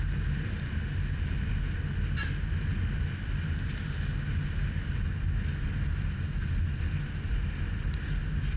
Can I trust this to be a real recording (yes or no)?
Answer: yes